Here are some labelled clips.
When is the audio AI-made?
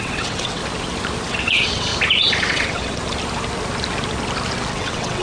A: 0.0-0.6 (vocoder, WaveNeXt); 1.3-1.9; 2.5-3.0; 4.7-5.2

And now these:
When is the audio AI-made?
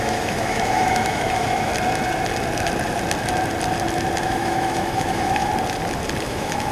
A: 0.0-1.7 (autoencoder, DAC-VAE); 4.2-5.5; 6.2-6.7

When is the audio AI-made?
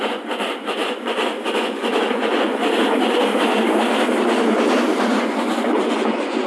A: 0.0-2.6 (vocoder, Vocos); 5.2-6.5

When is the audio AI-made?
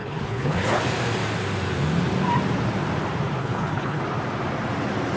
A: 0.0-0.8 (codec, HILCodec); 3.4-4.0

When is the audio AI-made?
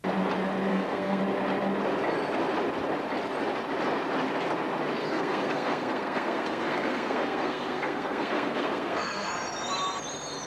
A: 0.7-1.2 (codec, SNAC); 5.0-9.3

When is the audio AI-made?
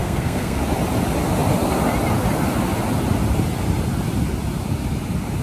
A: 0.0-0.6 (codec, SNAC)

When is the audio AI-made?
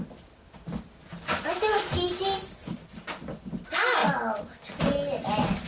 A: none